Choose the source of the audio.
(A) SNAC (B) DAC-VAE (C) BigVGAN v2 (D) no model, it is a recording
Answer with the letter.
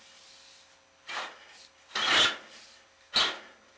D